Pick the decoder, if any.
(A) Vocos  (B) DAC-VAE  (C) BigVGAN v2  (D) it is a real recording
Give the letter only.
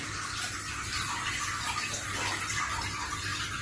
D